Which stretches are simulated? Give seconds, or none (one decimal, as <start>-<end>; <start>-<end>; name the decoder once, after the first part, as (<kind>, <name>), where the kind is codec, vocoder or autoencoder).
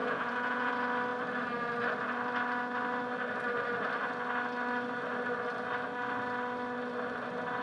0.0-0.7 (vocoder, Vocos)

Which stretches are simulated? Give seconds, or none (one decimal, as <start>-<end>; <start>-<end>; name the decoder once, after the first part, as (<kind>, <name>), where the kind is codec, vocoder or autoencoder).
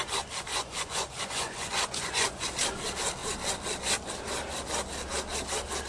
0.5-2.5 (vocoder, Vocos)